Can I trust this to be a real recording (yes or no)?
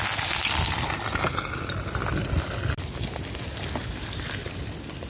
yes